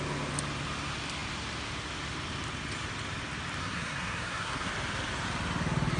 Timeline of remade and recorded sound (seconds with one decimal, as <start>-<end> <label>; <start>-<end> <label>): 0.0-3.6 recorded; 3.6-4.7 remade; 4.7-6.0 recorded